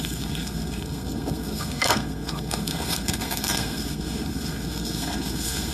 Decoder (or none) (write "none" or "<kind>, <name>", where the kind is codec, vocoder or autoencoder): codec, SNAC